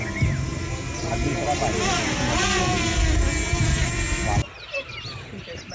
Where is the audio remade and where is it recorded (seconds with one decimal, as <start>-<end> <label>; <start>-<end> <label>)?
0.0-5.7 recorded